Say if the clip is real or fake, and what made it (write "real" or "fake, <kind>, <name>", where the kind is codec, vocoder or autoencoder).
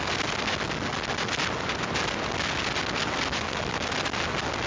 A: real